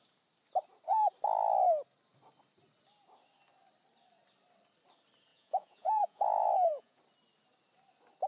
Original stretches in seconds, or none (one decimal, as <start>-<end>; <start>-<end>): 0.0-5.3; 7.0-8.3